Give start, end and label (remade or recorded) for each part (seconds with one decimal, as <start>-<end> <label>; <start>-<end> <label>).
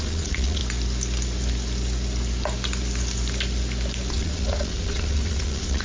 0.0-0.6 remade; 0.6-4.1 recorded; 4.1-5.8 remade